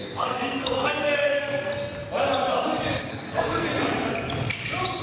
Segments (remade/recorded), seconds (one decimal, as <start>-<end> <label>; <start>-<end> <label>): 0.0-1.7 remade; 1.7-3.1 recorded; 3.1-3.7 remade; 3.7-5.0 recorded